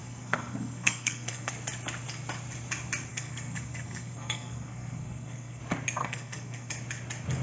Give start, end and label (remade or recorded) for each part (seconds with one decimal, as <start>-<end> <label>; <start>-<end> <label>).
0.0-1.5 remade; 1.5-3.1 recorded; 3.1-5.6 remade; 5.6-6.0 recorded; 6.0-6.7 remade; 6.7-7.4 recorded